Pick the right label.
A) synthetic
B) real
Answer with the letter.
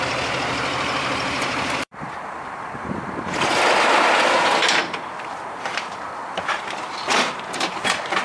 A